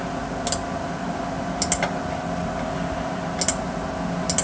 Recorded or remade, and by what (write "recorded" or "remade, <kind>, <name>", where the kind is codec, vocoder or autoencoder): recorded